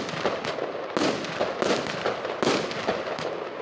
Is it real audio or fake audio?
real